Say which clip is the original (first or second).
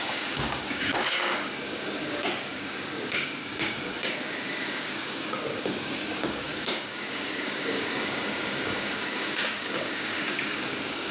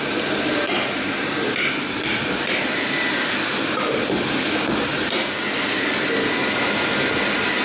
second